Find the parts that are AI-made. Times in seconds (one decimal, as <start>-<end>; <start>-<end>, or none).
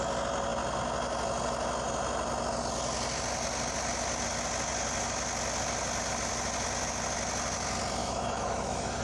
8.0-9.0